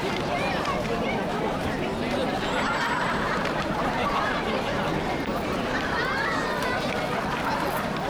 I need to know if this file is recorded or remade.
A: remade